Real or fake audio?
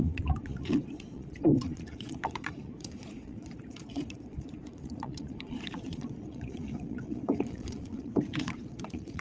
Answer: fake